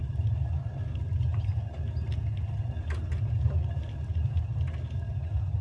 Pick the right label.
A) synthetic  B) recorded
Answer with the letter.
B